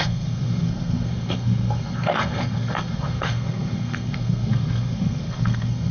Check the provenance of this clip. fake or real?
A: fake